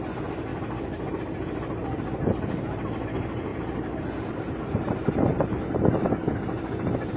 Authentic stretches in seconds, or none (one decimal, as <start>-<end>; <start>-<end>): 0.0-7.2